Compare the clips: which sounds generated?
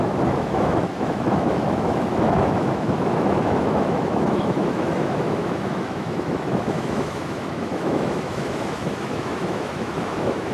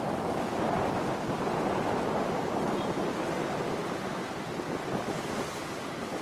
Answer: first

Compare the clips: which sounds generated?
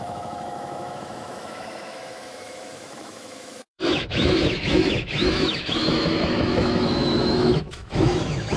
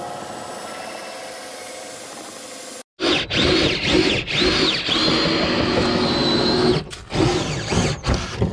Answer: first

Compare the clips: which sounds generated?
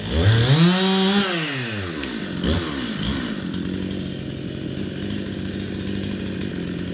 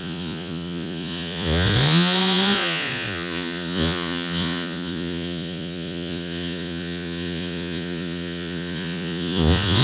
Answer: second